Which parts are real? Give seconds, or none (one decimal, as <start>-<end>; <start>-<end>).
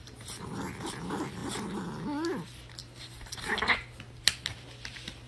0.6-2.8; 4.0-5.3